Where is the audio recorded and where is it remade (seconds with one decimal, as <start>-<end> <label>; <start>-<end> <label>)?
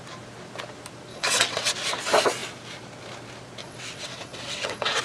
0.0-1.1 recorded; 1.1-1.7 remade; 1.7-3.6 recorded; 3.6-5.0 remade